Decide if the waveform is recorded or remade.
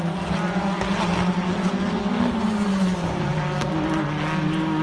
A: recorded